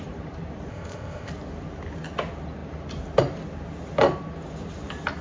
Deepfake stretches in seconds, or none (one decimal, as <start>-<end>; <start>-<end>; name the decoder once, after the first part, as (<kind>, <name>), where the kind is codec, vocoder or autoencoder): 0.7-1.3 (codec, ZipCodec)